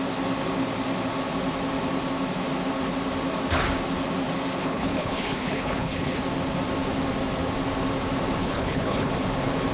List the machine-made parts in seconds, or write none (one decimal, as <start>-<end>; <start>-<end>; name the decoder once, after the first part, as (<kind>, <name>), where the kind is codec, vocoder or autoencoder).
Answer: 4.6-6.2 (codec, HILCodec); 8.4-9.1